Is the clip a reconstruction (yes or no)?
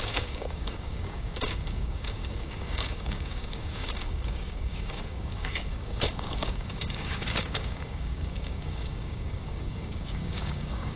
yes